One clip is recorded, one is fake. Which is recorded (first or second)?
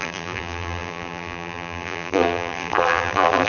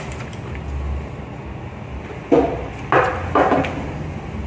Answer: second